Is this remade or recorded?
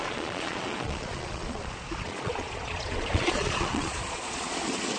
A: remade